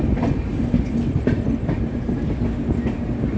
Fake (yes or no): no